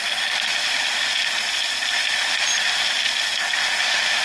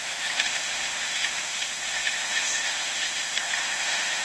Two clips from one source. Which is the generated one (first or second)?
second